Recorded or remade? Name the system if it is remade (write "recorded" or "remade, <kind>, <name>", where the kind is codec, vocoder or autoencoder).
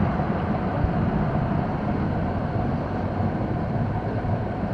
recorded